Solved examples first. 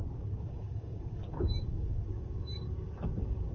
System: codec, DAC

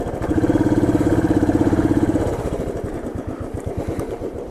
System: vocoder, BigVGAN v2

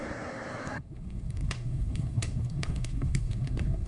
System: codec, SNAC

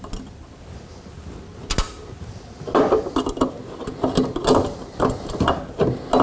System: none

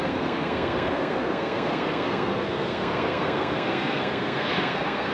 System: codec, SNAC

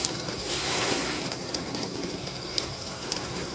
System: codec, SNAC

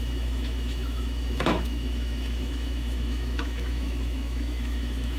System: autoencoder, DAC-VAE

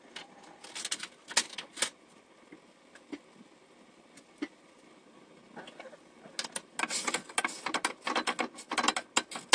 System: none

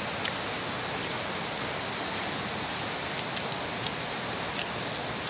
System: none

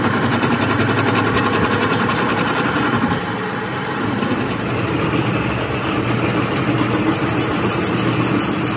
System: none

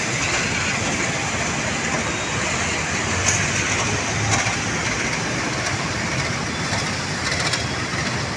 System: none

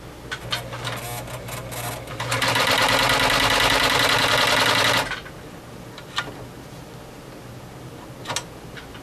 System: none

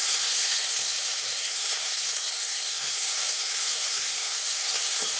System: codec, SNAC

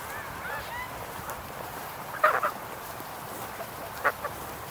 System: vocoder, BigVGAN v2